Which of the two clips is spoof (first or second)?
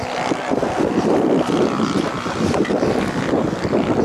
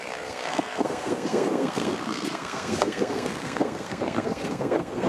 second